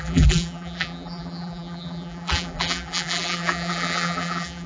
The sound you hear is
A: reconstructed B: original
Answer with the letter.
A